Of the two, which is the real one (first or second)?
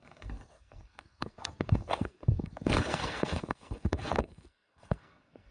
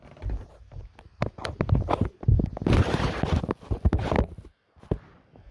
second